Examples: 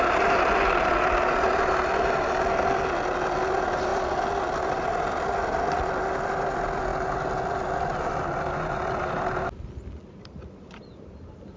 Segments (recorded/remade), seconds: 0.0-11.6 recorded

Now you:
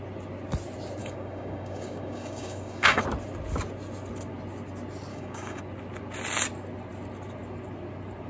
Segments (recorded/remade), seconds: 0.0-1.0 recorded; 1.0-3.0 remade; 3.0-5.1 recorded; 5.1-5.6 remade; 5.6-8.3 recorded

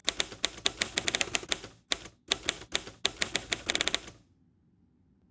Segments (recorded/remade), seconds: 0.0-5.3 recorded